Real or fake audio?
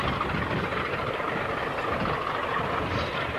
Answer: real